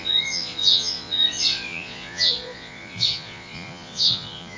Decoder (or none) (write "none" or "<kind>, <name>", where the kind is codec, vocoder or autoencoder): vocoder, Vocos